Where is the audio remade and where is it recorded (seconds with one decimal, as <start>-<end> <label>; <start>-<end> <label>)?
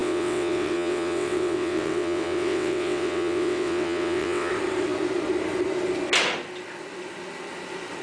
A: 0.0-4.5 remade; 4.5-8.0 recorded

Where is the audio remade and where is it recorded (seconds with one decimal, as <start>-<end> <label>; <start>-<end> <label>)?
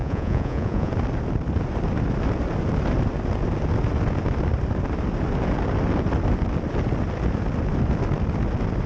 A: 0.0-0.9 remade; 0.9-8.9 recorded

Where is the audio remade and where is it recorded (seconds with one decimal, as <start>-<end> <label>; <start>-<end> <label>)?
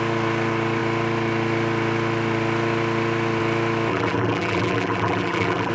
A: 0.0-3.9 recorded; 3.9-5.7 remade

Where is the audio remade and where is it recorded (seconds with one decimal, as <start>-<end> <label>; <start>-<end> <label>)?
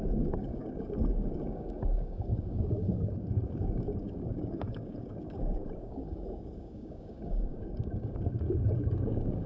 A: 0.0-9.5 remade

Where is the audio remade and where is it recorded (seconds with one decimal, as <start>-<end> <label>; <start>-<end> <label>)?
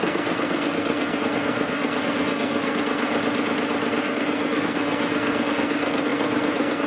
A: 0.0-3.1 remade; 3.1-3.9 recorded; 3.9-6.9 remade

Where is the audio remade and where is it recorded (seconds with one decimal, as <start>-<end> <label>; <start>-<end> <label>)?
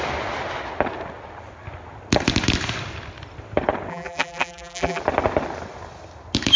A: 0.0-3.9 recorded; 3.9-5.0 remade; 5.0-6.6 recorded